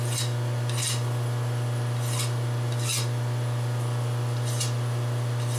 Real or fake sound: real